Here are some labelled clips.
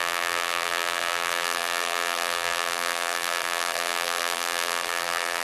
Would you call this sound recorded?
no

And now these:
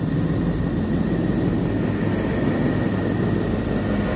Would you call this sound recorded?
yes